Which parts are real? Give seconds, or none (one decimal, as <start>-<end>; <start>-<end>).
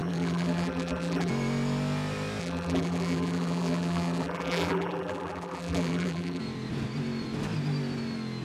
1.3-2.4; 6.4-8.4